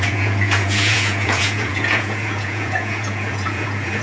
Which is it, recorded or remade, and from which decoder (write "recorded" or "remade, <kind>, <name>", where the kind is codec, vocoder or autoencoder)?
remade, vocoder, Vocos